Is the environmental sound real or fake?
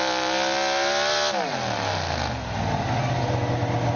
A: real